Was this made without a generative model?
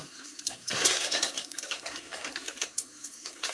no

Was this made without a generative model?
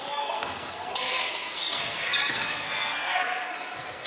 no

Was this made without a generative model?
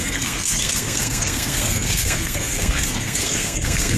no